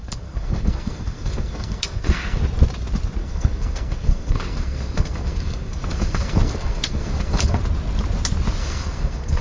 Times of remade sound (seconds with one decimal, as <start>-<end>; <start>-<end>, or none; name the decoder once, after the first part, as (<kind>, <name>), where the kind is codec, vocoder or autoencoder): 0.0-2.4 (codec, SNAC); 3.2-7.6; 8.6-9.4